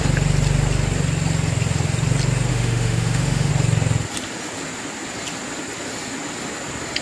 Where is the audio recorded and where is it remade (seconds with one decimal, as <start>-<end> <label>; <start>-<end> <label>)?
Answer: 0.0-2.5 recorded; 2.5-3.5 remade; 3.5-7.0 recorded